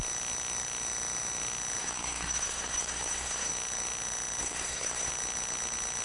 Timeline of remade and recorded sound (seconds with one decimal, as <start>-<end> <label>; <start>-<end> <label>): 0.0-1.8 recorded; 1.8-3.5 remade; 3.5-4.4 recorded; 4.4-5.1 remade; 5.1-6.0 recorded